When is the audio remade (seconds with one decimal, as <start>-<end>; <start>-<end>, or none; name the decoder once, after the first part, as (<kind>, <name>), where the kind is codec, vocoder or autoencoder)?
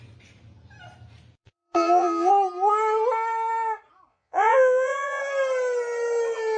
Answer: 1.4-2.3 (vocoder, Vocos); 4.1-5.2